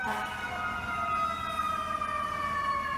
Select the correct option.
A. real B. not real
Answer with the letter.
A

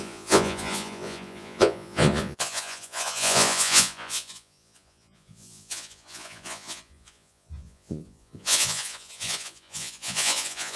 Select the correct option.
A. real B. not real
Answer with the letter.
B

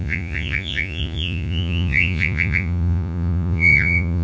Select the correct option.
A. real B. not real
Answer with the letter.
B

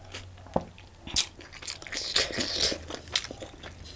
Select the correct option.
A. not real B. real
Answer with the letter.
B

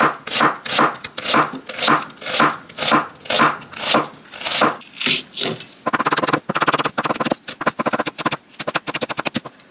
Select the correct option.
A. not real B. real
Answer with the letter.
B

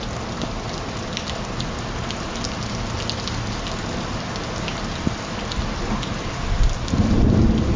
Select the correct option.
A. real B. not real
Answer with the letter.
A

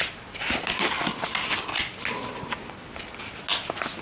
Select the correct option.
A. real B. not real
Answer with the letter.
A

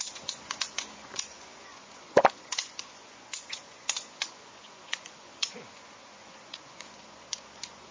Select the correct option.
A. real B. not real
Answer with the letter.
B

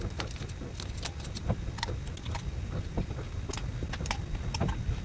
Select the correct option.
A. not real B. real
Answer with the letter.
B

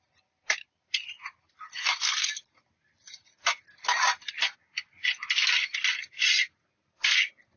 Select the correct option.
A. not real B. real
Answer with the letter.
B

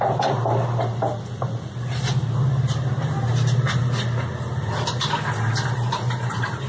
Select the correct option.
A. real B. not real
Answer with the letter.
A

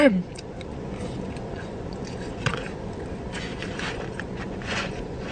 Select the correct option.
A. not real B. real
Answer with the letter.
A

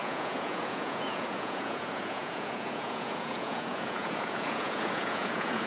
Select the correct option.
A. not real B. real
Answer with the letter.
A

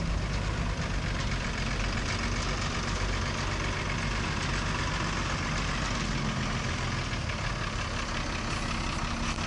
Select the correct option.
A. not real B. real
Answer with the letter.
B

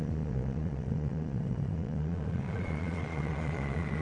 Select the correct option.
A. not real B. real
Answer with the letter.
A